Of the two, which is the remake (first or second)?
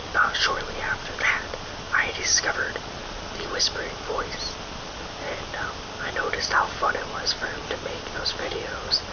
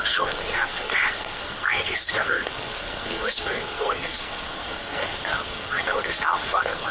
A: second